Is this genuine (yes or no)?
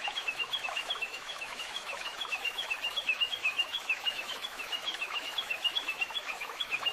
no